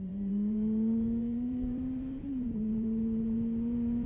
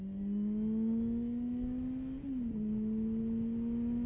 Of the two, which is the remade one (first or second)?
first